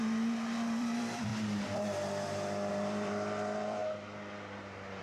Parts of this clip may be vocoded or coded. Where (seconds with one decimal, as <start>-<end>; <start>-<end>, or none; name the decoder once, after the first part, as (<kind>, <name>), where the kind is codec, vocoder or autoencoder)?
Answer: 0.0-1.3 (vocoder, BigVGAN v2); 2.7-3.8